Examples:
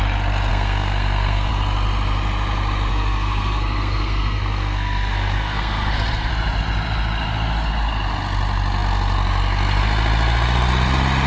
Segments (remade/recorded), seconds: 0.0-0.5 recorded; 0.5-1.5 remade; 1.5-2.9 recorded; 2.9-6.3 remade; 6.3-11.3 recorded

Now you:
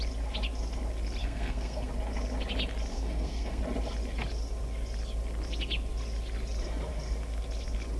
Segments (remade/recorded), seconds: 0.0-1.2 recorded; 1.2-1.9 remade; 1.9-2.9 recorded; 2.9-3.6 remade; 3.6-8.0 recorded

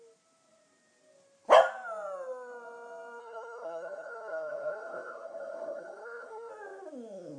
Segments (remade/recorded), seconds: 0.0-3.2 recorded; 3.2-6.5 remade; 6.5-7.4 recorded

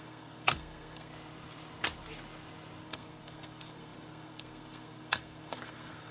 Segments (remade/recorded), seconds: 0.0-1.1 remade; 1.1-2.8 recorded; 2.8-6.1 remade

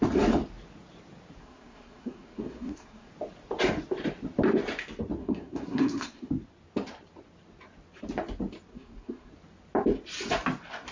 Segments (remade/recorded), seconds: 0.0-1.4 recorded; 1.4-3.1 remade; 3.1-5.2 recorded; 5.2-6.3 remade; 6.3-8.7 recorded; 8.7-9.3 remade; 9.3-10.9 recorded